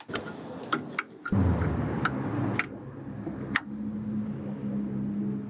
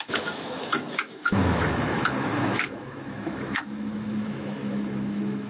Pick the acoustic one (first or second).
first